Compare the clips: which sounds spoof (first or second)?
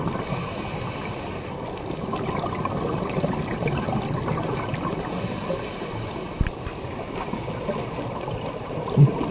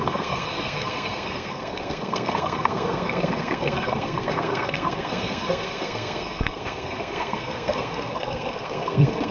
second